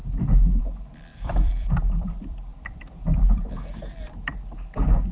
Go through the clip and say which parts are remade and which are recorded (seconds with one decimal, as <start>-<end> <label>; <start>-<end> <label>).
0.0-0.6 remade; 0.6-1.1 recorded; 1.1-3.5 remade; 3.5-5.1 recorded